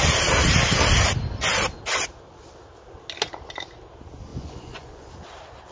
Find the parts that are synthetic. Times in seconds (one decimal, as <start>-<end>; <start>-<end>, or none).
4.3-5.1